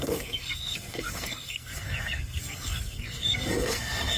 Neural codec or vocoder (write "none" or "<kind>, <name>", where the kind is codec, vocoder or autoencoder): codec, SNAC